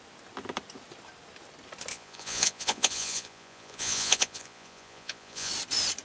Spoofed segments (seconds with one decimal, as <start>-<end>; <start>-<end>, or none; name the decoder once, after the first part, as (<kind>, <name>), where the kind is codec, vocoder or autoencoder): 1.9-5.5 (vocoder, Vocos)